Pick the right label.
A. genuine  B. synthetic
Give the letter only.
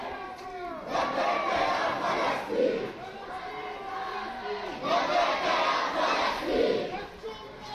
A